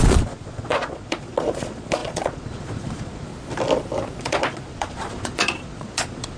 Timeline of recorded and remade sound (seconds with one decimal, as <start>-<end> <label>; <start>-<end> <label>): 0.0-3.3 remade; 3.3-4.2 recorded; 4.2-6.4 remade